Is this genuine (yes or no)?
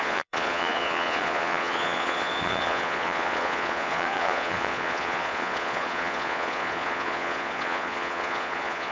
no